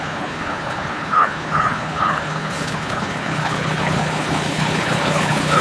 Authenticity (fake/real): fake